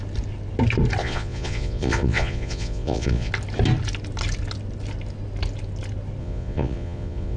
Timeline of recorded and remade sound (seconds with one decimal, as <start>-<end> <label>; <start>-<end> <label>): 0.0-1.0 recorded; 1.0-3.3 remade; 3.3-6.2 recorded; 6.2-7.4 remade

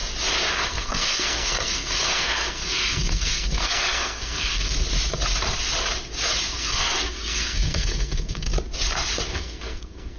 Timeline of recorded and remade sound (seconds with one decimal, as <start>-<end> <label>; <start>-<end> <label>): 0.0-0.5 recorded; 0.5-4.7 remade; 4.7-6.5 recorded; 6.5-8.5 remade; 8.5-9.3 recorded; 9.3-10.2 remade

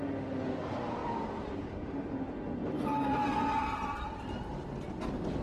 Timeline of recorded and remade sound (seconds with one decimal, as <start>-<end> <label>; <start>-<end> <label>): 0.0-1.0 recorded; 1.0-2.1 remade; 2.1-3.6 recorded; 3.6-4.1 remade; 4.1-5.4 recorded

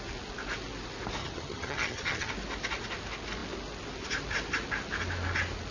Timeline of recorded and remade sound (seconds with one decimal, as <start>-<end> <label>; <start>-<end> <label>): 0.0-1.2 recorded; 1.2-2.3 remade; 2.3-5.7 recorded

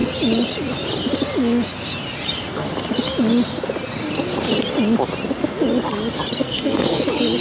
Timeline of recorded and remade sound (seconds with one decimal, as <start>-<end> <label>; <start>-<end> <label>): 0.0-6.4 recorded; 6.4-7.0 remade; 7.0-7.4 recorded

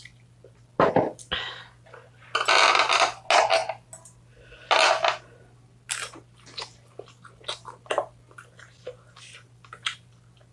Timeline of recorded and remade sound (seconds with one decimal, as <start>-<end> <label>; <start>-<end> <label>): 0.0-10.5 recorded